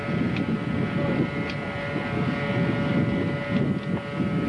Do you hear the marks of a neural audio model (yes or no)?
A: no